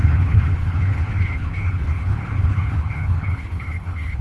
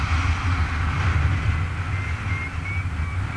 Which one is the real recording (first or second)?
second